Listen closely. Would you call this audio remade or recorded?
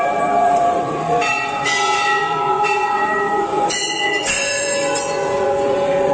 remade